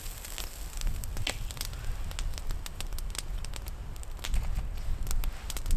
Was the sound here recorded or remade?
recorded